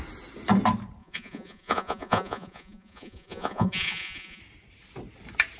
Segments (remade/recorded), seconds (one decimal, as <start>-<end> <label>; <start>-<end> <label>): 0.0-1.0 recorded; 1.0-4.4 remade; 4.4-5.6 recorded